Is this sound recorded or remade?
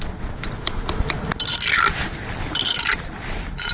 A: recorded